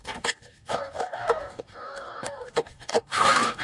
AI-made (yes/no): yes